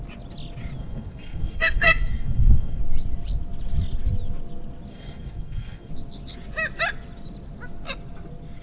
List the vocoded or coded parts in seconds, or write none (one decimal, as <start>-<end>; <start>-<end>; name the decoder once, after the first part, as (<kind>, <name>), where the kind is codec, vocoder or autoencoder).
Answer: 0.8-2.8 (codec, SNAC); 4.9-5.9